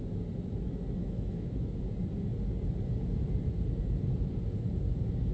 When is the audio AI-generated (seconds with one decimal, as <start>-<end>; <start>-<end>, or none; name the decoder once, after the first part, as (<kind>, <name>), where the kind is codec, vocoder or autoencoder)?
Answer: 1.0-1.8 (autoencoder, DAC-VAE)